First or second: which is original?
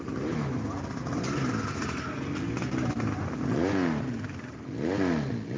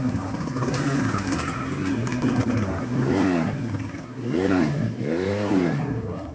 first